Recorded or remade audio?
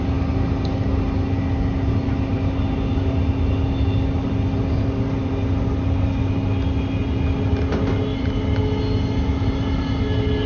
recorded